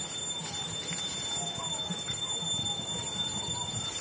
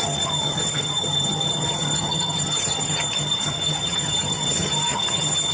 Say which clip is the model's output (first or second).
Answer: second